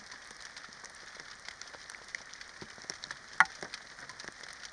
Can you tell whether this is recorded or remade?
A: recorded